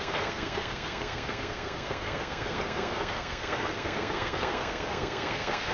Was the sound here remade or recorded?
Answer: remade